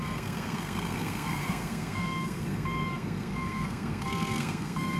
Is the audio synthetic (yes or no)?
yes